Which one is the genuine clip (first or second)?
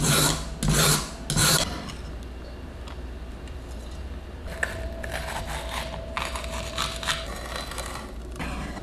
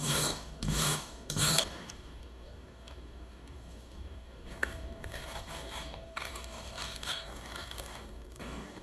first